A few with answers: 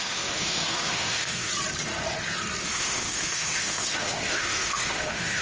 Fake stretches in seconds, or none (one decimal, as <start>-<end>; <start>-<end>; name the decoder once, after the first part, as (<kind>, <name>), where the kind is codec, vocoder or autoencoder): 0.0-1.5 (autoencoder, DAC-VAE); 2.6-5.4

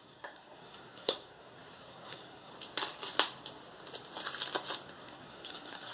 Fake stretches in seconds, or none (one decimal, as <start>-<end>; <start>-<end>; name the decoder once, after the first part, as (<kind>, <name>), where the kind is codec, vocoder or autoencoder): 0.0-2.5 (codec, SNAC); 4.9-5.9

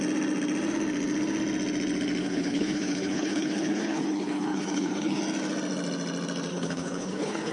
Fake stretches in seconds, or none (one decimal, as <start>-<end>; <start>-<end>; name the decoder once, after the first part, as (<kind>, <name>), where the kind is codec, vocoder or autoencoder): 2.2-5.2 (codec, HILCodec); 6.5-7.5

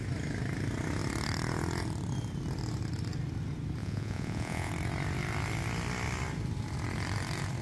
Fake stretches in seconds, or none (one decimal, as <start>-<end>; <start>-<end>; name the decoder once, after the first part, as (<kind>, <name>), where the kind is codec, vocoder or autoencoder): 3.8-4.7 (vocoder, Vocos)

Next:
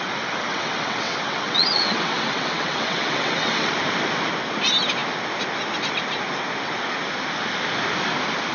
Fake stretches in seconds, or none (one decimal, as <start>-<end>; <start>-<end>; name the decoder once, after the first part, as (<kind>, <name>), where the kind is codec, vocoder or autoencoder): 0.5-3.7 (vocoder, WaveNeXt)